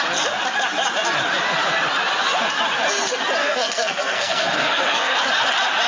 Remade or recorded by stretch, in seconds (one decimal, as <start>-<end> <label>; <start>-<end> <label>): 0.0-3.4 recorded; 3.4-5.2 remade; 5.2-5.9 recorded